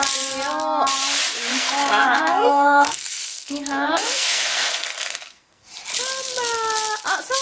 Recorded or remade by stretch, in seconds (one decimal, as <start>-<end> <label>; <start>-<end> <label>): 0.0-1.5 recorded; 1.5-5.7 remade; 5.7-7.4 recorded